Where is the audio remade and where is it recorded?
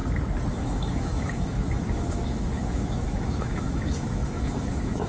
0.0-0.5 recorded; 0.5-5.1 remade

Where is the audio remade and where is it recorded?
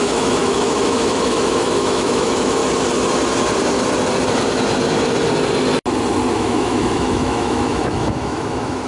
0.0-2.6 remade; 2.6-6.3 recorded; 6.3-8.9 remade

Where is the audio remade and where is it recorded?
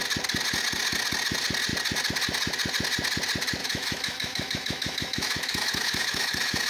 0.0-3.6 recorded; 3.6-6.7 remade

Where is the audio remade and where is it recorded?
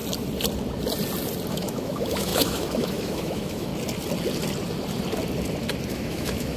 0.0-1.5 recorded; 1.5-3.7 remade; 3.7-5.9 recorded; 5.9-6.6 remade